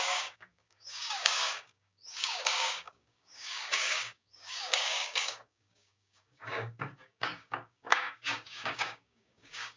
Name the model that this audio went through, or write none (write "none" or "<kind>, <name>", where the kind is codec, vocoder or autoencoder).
codec, DAC